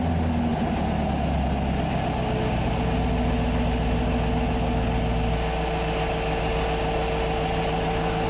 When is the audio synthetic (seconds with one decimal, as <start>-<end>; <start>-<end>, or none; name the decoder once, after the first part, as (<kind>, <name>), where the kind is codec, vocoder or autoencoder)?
none